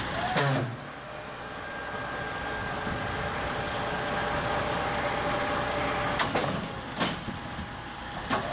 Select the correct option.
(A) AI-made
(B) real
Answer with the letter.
B